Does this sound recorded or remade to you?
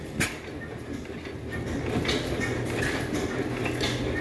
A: recorded